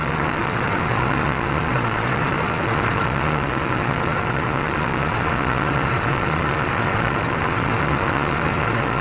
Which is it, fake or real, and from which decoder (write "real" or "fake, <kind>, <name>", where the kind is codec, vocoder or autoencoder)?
fake, vocoder, Vocos